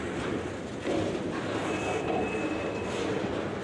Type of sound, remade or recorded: recorded